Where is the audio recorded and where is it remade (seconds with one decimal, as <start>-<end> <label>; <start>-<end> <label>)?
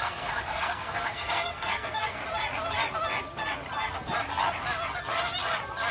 0.0-2.2 remade; 2.2-5.9 recorded